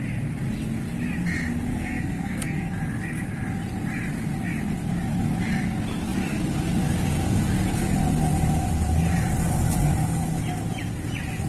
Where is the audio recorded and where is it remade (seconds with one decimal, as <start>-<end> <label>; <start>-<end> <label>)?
0.0-1.7 recorded; 1.7-2.7 remade; 2.7-11.5 recorded